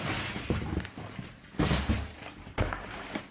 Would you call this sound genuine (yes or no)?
yes